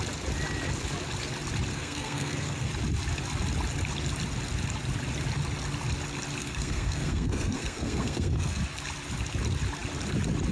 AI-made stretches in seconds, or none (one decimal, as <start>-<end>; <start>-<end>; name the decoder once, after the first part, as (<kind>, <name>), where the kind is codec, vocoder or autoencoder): 1.7-2.7 (codec, SNAC); 6.4-8.6